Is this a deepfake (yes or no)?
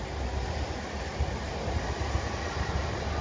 no